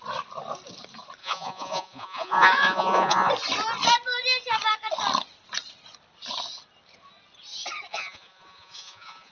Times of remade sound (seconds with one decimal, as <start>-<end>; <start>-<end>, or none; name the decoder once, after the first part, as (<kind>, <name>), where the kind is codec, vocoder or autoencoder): 1.2-3.3 (vocoder, Vocos); 7.9-9.3